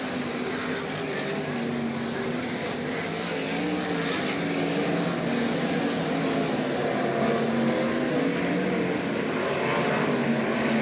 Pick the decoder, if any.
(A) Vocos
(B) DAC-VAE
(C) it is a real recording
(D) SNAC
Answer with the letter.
C